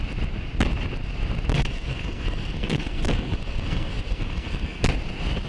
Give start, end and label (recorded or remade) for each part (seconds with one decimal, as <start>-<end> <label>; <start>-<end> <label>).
0.0-1.5 recorded; 1.5-4.8 remade; 4.8-5.5 recorded

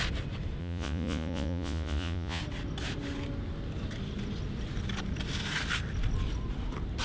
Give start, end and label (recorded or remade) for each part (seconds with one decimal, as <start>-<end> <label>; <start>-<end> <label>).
0.0-0.6 recorded; 0.6-2.4 remade; 2.4-7.0 recorded

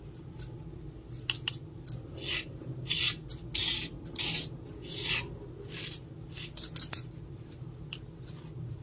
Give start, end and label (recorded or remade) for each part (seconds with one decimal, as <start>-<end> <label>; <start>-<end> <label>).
0.0-8.8 recorded

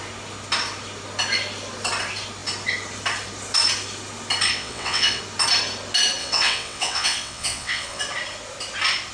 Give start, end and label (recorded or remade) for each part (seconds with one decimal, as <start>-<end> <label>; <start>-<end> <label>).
0.0-4.5 recorded; 4.5-5.2 remade; 5.2-6.2 recorded; 6.2-8.0 remade; 8.0-9.1 recorded

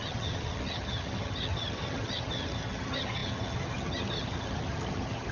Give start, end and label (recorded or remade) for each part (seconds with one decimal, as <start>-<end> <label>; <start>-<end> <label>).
0.0-5.3 remade